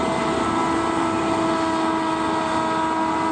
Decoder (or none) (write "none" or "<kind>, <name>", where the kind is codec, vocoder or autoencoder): none